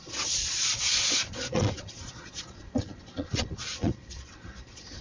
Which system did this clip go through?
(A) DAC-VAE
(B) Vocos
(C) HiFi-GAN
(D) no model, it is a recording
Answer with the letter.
B